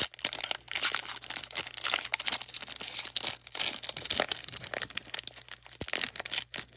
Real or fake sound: real